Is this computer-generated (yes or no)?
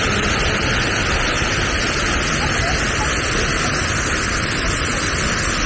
no